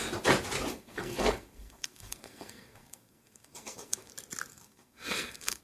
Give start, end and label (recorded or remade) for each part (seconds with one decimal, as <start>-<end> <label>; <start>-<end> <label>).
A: 0.0-0.7 recorded; 0.7-4.1 remade; 4.1-4.5 recorded; 4.5-5.6 remade